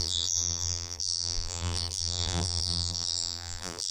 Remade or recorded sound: remade